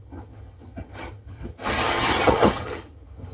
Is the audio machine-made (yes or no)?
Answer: yes